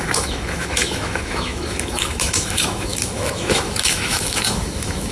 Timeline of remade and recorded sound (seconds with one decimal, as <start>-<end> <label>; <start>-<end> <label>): 0.0-5.1 remade